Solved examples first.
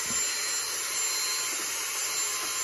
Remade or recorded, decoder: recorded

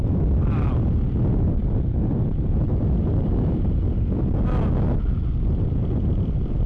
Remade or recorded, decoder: recorded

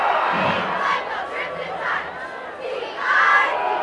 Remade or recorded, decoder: recorded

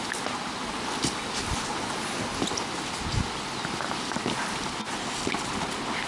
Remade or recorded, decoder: recorded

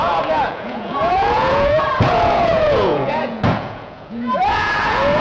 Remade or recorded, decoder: remade, vocoder, Vocos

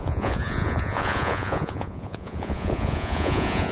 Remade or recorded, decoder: remade, vocoder, Vocos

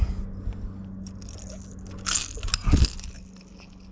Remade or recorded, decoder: recorded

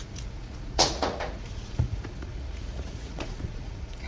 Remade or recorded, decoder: remade, vocoder, Vocos